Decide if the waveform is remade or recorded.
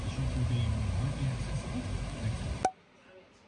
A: recorded